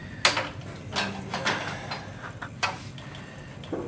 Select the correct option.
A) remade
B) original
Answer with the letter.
B